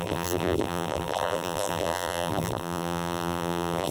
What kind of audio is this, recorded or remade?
remade